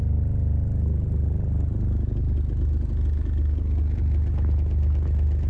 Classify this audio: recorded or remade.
recorded